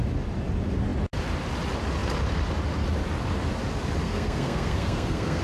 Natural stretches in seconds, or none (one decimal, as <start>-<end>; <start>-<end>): 0.0-4.0